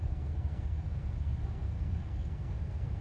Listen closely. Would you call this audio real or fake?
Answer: fake